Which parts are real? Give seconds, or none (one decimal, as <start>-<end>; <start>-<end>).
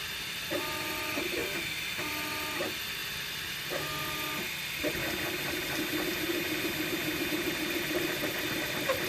1.4-2.1; 5.0-7.3